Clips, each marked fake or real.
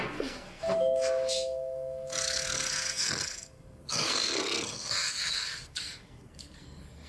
fake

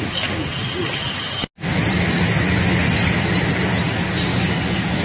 real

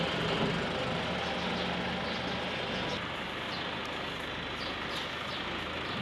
real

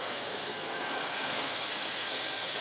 fake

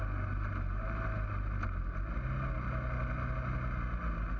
real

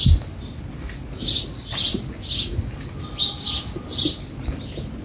real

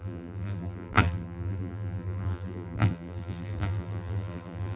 fake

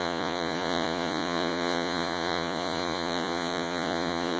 fake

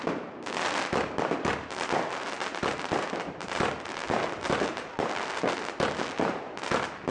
real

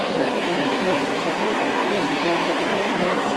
fake